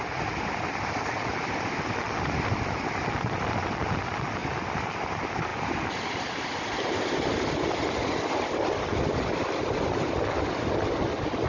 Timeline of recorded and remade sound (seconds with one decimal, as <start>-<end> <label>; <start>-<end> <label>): 0.0-4.4 recorded; 4.4-5.1 remade; 5.1-11.5 recorded